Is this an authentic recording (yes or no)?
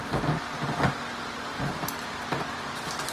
yes